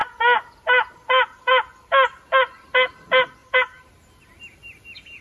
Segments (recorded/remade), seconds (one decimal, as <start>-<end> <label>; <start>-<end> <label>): 0.0-5.2 recorded